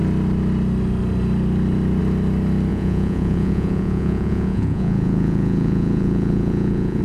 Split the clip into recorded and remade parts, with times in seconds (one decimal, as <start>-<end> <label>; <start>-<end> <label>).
0.0-2.7 recorded; 2.7-7.0 remade